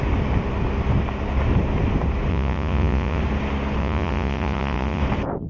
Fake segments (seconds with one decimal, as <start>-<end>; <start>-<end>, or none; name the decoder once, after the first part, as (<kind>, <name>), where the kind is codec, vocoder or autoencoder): 2.3-3.2 (vocoder, Vocos); 3.8-5.0